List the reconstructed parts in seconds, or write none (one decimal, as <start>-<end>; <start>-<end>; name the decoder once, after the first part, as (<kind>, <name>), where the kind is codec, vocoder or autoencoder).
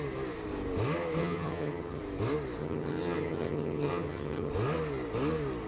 1.2-2.0 (vocoder, HiFi-GAN); 2.6-4.5